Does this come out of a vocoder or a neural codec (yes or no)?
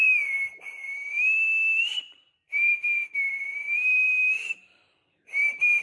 yes